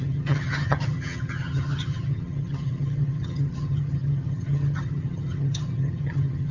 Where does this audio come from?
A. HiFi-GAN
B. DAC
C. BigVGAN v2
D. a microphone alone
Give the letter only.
A